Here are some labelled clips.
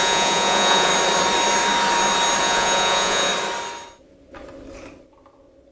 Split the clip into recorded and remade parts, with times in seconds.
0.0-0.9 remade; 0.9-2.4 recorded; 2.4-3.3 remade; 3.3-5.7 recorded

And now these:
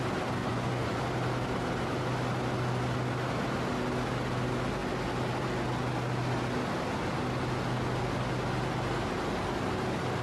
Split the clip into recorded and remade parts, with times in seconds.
0.0-0.4 recorded; 0.4-1.0 remade; 1.0-10.2 recorded

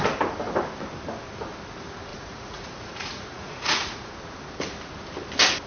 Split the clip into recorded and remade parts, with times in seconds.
0.0-2.1 recorded; 2.1-4.1 remade; 4.1-5.7 recorded

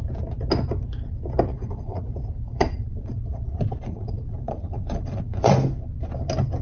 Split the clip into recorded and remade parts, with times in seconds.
0.0-1.5 recorded; 1.5-5.5 remade; 5.5-6.6 recorded

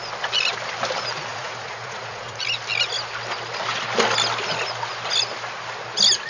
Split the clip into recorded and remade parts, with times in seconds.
0.0-1.3 recorded; 1.3-2.4 remade; 2.4-6.3 recorded